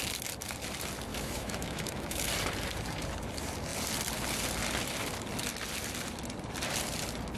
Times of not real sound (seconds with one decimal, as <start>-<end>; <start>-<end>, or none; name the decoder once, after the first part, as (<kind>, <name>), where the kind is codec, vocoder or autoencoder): 1.1-2.3 (autoencoder, DAC-VAE)